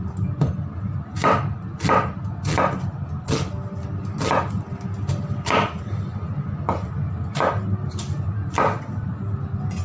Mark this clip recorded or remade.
recorded